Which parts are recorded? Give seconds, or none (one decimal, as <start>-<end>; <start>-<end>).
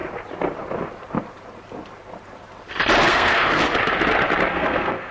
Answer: 0.0-3.1; 3.6-4.5